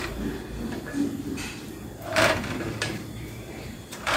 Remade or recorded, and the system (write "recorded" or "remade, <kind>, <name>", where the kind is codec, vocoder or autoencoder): remade, vocoder, BigVGAN v2